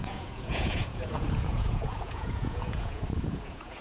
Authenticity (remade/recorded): remade